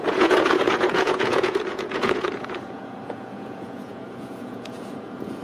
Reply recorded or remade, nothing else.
remade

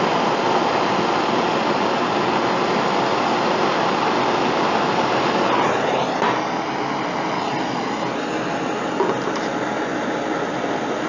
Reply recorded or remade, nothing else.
recorded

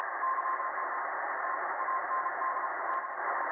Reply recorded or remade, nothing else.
recorded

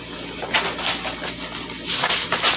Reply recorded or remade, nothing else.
recorded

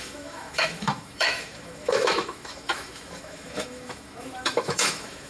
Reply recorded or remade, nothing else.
remade